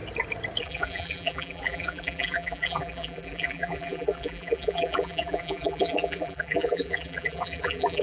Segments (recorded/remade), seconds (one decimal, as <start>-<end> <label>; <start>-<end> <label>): 0.0-0.6 recorded; 0.6-8.0 remade